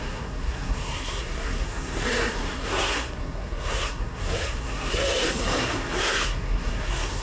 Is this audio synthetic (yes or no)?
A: yes